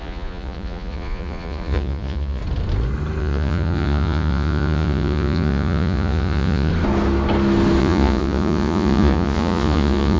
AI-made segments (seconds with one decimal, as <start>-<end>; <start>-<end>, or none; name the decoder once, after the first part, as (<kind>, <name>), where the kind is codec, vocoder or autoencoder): 0.0-2.4 (vocoder, Vocos); 3.2-6.7; 7.8-10.2